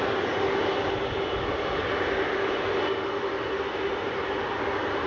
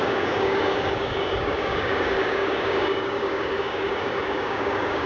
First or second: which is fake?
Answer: second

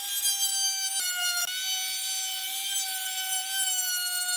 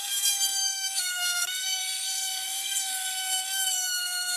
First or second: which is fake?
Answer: second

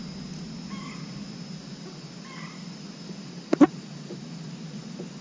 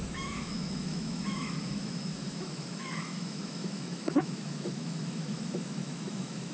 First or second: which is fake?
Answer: second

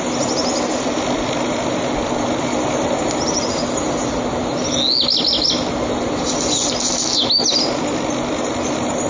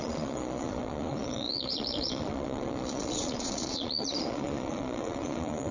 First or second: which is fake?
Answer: second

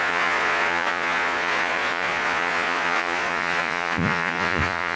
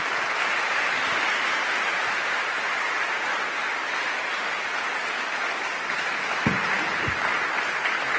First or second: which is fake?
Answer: first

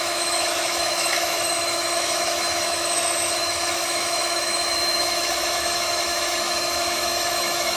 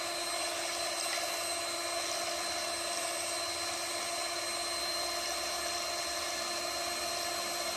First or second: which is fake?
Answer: first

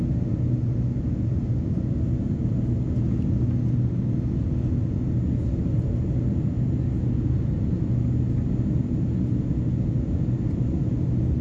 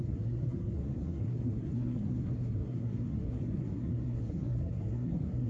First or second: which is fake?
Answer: second